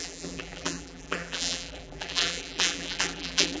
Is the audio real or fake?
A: fake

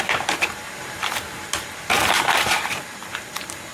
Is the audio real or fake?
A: fake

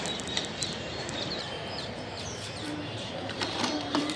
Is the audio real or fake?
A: fake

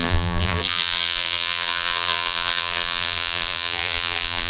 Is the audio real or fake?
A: fake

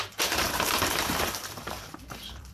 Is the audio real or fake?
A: fake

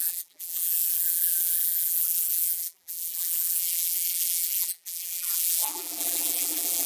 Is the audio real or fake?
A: fake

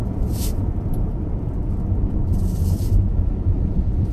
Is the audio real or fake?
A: fake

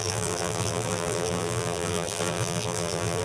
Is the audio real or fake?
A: fake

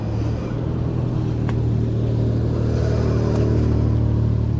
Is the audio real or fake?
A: real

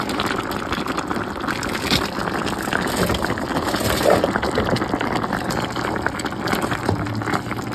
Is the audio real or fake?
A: real